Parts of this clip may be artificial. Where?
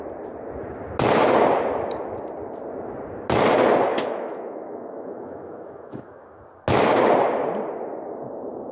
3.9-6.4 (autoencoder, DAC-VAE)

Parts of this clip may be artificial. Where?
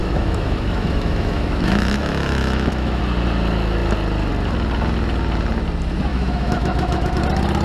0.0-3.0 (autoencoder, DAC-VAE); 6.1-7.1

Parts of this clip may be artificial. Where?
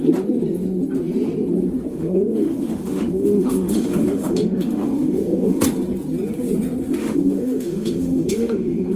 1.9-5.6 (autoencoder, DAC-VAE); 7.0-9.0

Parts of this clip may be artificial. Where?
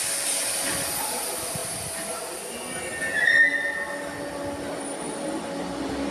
none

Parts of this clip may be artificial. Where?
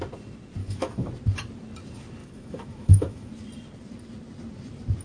0.6-1.1 (autoencoder, DAC-VAE); 2.2-3.3